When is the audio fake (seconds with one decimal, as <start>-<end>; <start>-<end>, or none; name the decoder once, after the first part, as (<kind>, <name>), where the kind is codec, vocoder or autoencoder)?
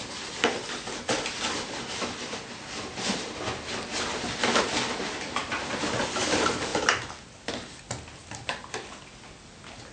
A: none